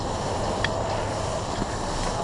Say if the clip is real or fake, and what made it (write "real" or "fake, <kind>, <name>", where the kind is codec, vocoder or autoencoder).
real